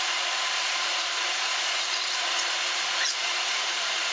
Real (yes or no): no